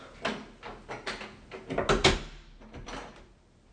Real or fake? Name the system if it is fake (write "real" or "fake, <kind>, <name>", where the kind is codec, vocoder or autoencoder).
real